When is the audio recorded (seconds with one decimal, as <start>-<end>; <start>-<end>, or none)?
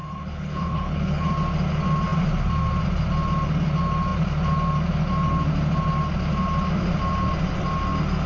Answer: 1.3-8.3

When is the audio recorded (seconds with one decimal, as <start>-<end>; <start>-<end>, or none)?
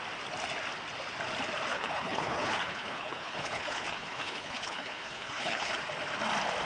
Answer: 0.0-1.7; 5.7-6.7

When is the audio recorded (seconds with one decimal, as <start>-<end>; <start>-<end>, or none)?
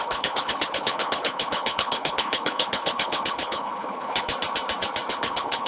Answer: 4.3-5.1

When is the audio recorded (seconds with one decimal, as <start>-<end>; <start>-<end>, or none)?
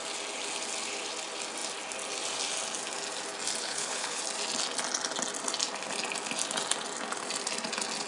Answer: 0.0-3.6; 4.2-8.1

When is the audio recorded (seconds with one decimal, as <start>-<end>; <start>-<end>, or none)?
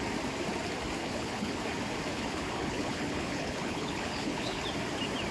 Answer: 0.0-1.0; 1.6-2.1; 4.6-5.3